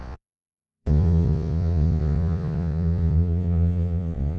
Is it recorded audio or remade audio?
remade